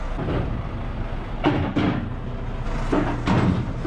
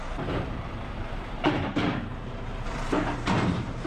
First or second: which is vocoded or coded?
second